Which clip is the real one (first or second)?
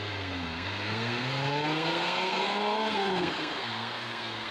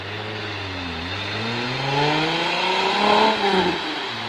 second